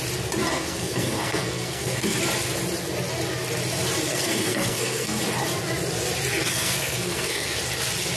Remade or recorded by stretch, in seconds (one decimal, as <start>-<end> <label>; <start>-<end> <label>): 0.0-0.5 recorded; 0.5-2.2 remade; 2.2-4.1 recorded; 4.1-5.2 remade; 5.2-6.4 recorded; 6.4-7.6 remade; 7.6-8.2 recorded